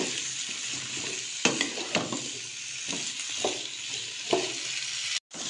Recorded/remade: recorded